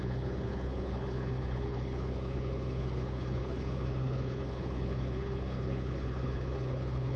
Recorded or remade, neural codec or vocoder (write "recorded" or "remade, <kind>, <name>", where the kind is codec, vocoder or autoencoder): remade, codec, HILCodec